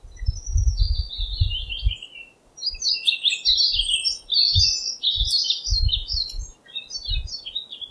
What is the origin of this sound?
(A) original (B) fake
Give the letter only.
A